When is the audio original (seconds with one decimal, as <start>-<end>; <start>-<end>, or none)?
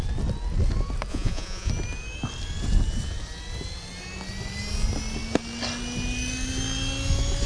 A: 0.0-1.1; 1.7-7.5